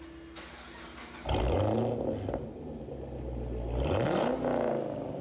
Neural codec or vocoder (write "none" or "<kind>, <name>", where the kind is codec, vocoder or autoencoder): none